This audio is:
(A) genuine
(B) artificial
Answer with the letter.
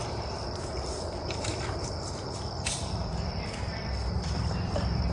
B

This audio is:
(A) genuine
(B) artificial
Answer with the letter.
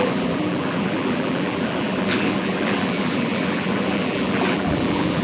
B